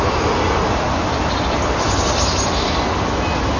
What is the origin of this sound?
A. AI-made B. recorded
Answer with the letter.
B